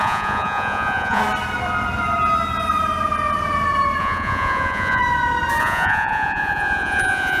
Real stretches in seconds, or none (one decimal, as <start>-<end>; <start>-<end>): 1.2-4.0; 5.0-5.6